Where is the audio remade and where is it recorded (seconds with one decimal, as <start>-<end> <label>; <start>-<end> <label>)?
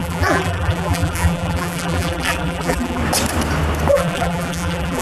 0.0-3.0 remade; 3.0-3.9 recorded; 3.9-5.0 remade